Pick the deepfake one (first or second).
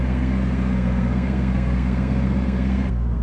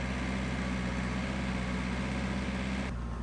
first